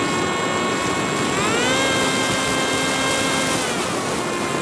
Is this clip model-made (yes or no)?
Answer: no